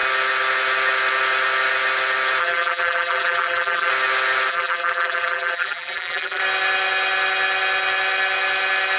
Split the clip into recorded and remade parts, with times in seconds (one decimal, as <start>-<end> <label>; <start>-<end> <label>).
0.0-2.4 recorded; 2.4-3.9 remade; 3.9-4.5 recorded; 4.5-6.4 remade; 6.4-9.0 recorded